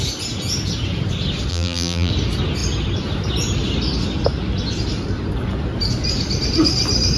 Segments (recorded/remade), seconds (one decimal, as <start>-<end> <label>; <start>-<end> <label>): 0.0-1.5 recorded; 1.5-2.1 remade; 2.1-7.2 recorded